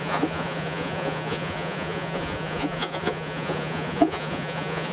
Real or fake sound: fake